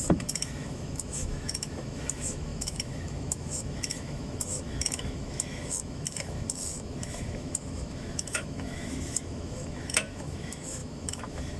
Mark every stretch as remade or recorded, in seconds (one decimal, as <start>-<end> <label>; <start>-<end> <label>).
0.0-11.6 remade